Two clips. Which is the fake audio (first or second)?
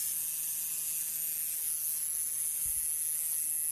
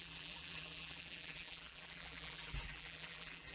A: second